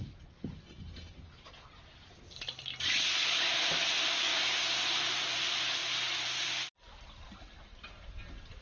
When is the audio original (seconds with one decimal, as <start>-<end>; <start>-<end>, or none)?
0.0-5.8; 7.4-8.6